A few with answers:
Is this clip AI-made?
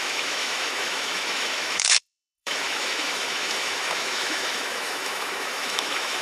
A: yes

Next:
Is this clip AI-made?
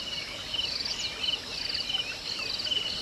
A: no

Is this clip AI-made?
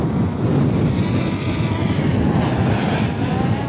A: no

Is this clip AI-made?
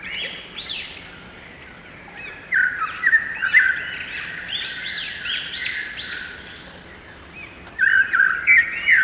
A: no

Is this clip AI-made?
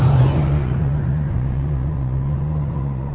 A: yes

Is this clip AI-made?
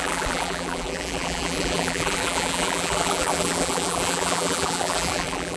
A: yes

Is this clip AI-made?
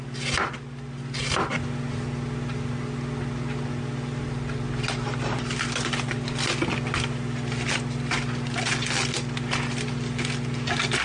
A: no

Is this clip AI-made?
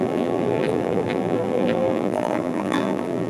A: yes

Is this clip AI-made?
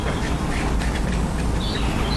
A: no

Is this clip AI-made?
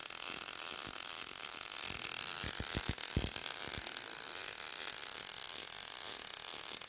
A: no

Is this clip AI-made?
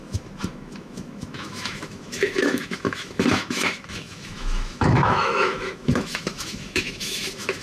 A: yes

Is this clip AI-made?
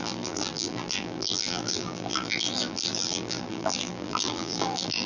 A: yes